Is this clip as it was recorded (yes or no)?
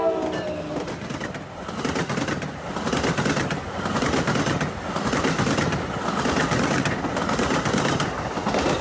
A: yes